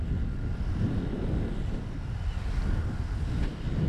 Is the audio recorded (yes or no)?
yes